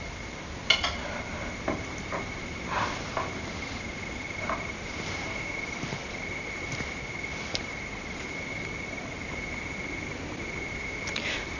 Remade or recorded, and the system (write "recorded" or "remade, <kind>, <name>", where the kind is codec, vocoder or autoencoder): recorded